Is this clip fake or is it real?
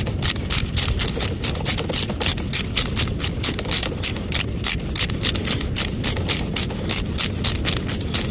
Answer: real